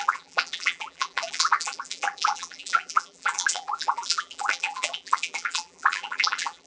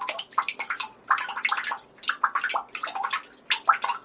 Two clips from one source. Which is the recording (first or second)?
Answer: second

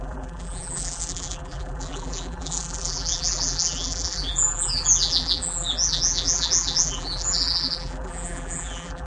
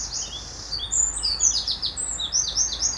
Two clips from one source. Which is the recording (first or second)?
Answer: second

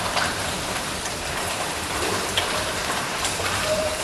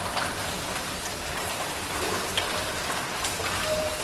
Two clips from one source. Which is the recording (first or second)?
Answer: second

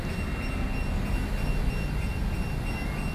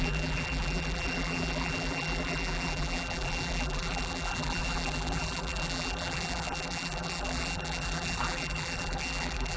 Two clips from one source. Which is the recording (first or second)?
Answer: first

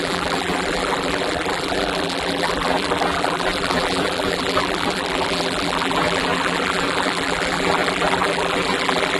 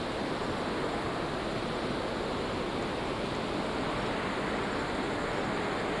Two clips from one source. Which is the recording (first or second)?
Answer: second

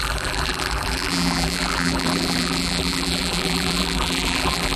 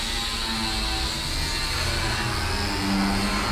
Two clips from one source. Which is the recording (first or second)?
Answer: second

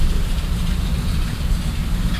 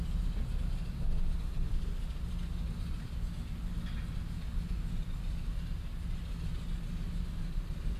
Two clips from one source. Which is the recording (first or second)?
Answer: second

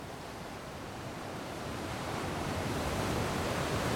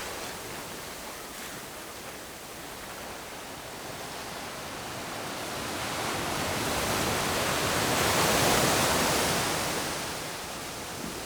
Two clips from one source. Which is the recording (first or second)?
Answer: second